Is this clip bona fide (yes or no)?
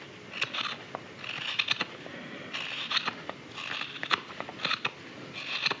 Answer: yes